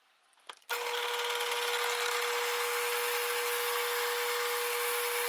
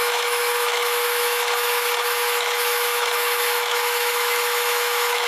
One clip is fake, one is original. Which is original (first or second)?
first